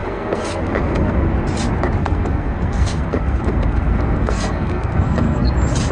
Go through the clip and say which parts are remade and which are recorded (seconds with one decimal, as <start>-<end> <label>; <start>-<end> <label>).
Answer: 0.0-1.3 remade; 1.3-2.0 recorded; 2.0-5.5 remade; 5.5-5.9 recorded